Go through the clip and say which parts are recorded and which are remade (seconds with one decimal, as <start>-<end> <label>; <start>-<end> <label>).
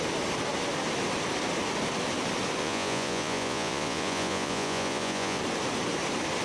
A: 0.0-2.6 recorded; 2.6-5.4 remade; 5.4-6.4 recorded